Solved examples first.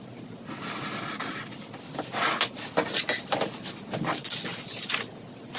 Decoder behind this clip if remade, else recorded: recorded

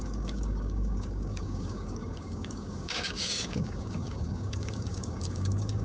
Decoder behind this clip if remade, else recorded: remade, codec, DAC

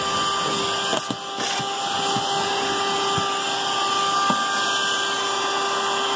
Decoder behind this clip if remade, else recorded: recorded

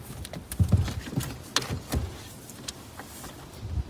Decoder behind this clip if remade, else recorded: recorded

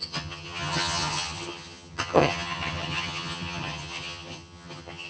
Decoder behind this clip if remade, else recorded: remade, vocoder, HiFi-GAN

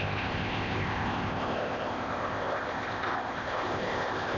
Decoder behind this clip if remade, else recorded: remade, codec, ZipCodec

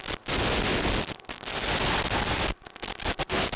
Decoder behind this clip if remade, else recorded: recorded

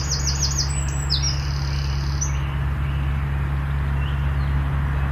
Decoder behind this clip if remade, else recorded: recorded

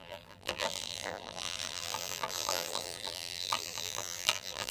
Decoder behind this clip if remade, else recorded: remade, vocoder, BigVGAN v2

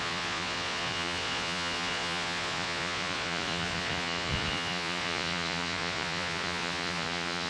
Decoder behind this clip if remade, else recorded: remade, vocoder, Vocos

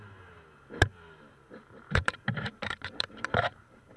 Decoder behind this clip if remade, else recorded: remade, vocoder, BigVGAN v2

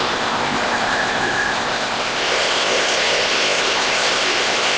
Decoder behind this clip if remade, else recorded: remade, codec, ZipCodec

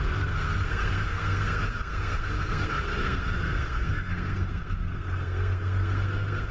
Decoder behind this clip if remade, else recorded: remade, codec, SNAC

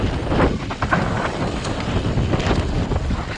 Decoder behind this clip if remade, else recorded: recorded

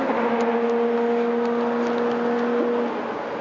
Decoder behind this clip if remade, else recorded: recorded